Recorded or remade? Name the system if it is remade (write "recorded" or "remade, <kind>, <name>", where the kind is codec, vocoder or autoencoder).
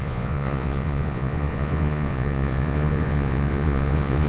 remade, vocoder, Vocos